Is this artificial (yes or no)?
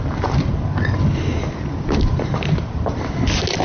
no